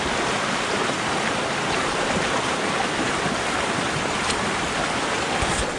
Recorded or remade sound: recorded